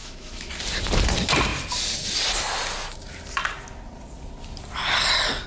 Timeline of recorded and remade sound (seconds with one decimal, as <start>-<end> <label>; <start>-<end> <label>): 0.0-0.5 remade; 0.5-5.5 recorded